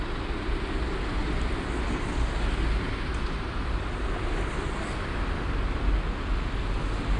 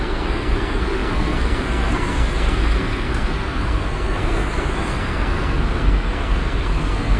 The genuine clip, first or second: first